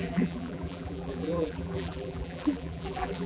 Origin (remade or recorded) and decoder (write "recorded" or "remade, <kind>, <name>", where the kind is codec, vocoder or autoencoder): remade, vocoder, BigVGAN v2